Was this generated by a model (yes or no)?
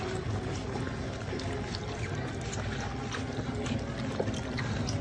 no